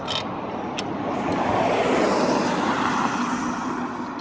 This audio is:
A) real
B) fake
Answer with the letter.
A